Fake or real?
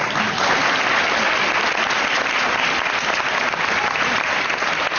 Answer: real